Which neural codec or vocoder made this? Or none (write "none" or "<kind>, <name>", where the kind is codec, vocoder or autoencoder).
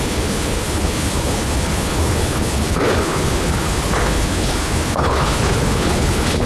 codec, HILCodec